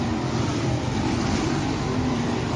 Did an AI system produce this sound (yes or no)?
yes